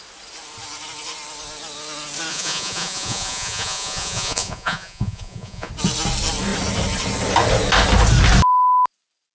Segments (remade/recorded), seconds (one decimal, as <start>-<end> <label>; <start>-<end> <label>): 0.0-2.3 recorded; 2.3-5.7 remade; 5.7-9.4 recorded